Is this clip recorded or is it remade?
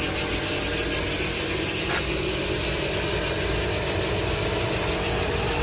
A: recorded